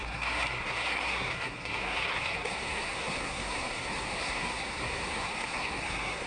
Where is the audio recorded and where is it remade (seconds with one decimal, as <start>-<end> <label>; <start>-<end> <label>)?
0.0-6.3 remade